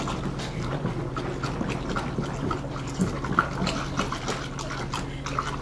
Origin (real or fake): real